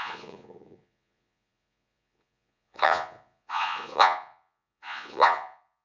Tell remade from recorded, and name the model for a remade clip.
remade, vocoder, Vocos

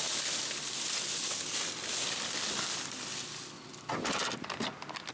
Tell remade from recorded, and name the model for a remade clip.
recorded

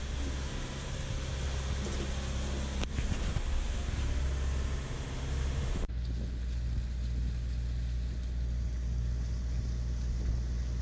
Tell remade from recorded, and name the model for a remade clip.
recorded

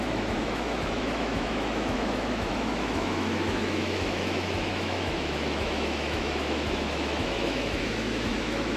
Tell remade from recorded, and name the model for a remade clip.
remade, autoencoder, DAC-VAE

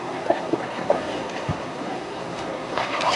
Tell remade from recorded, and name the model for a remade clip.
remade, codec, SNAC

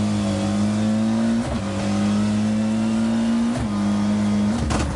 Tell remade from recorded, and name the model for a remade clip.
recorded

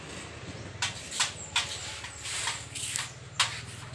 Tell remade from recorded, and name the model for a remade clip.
recorded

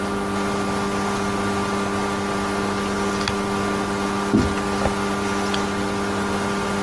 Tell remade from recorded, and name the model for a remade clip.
recorded